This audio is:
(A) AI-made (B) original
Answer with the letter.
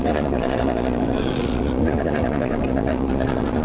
A